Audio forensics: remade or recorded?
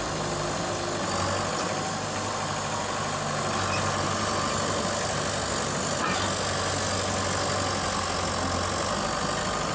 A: recorded